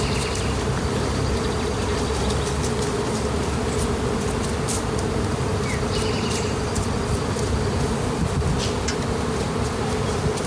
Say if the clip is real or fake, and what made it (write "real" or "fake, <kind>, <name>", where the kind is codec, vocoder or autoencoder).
real